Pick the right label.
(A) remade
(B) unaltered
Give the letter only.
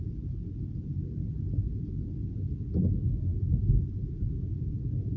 B